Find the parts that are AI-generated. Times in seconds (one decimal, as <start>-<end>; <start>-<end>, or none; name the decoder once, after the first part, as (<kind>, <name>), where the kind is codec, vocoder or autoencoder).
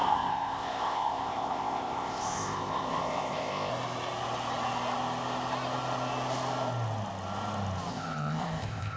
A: 0.0-3.7 (codec, ZipCodec); 7.9-9.0